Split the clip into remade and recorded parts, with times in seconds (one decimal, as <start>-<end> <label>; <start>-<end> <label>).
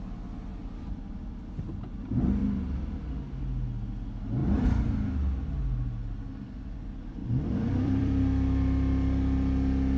0.0-0.6 recorded; 0.6-1.2 remade; 1.2-7.2 recorded; 7.2-10.0 remade